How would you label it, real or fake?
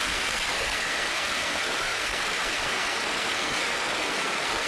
fake